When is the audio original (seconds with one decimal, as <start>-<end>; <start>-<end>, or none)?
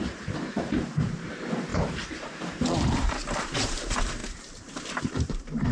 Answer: none